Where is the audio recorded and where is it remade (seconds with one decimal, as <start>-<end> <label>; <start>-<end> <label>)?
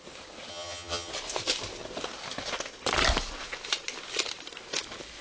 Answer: 0.0-0.5 recorded; 0.5-1.1 remade; 1.1-5.2 recorded